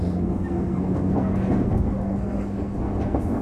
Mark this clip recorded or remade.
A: remade